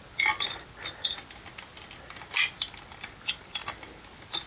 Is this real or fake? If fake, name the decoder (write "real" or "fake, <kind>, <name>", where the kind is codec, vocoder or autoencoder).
real